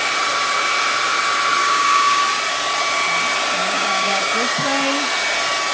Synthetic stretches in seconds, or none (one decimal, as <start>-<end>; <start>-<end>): 1.6-2.2; 3.6-4.2

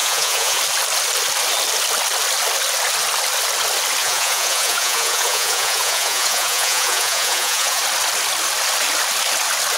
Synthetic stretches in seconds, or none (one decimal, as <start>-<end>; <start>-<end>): 0.0-0.6; 4.0-7.8

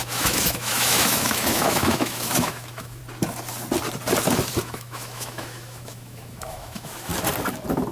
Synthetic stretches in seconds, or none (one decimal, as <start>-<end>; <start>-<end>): 0.0-3.0; 4.6-7.1

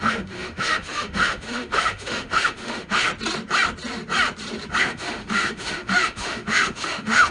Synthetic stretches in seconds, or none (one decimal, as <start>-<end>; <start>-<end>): 0.0-3.1; 4.8-7.3

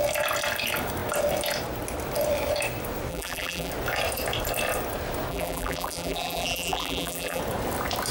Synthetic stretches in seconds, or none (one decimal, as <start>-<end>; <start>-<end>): 3.1-3.7; 5.3-7.4

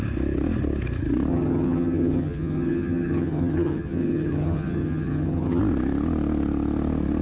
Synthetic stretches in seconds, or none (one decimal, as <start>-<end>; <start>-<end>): 1.3-5.6